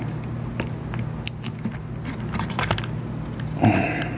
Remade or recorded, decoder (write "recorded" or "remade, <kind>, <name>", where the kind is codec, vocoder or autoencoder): recorded